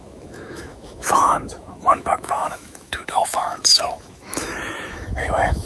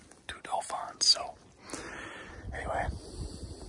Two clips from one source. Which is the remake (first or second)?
first